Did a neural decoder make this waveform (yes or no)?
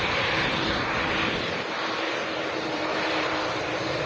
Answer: yes